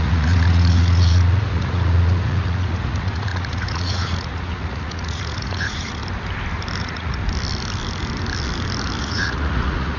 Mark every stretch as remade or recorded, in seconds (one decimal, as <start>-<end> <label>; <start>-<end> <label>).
0.0-6.0 remade; 6.0-6.8 recorded; 6.8-7.2 remade; 7.2-9.0 recorded; 9.0-10.0 remade